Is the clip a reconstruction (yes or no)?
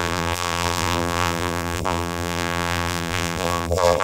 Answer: yes